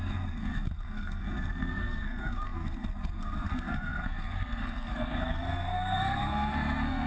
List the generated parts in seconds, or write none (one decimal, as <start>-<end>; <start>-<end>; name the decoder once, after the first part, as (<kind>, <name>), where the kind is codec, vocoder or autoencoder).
0.0-7.1 (codec, SNAC)